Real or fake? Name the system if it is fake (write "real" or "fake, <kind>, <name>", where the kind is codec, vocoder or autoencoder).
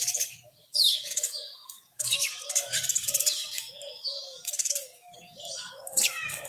fake, codec, DAC